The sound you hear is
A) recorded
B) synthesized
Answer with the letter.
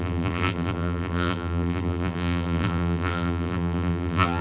B